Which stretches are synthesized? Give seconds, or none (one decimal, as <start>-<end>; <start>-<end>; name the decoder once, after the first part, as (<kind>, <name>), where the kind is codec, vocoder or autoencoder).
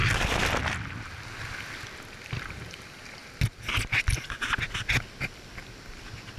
none